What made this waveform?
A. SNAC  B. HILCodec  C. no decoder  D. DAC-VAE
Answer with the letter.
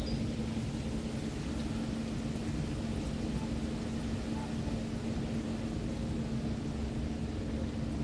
C